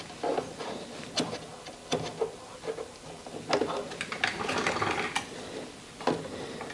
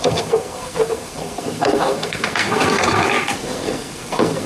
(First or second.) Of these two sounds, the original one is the first